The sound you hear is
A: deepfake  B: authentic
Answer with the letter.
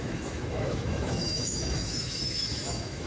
A